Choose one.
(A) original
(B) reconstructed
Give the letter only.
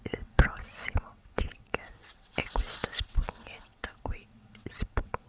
B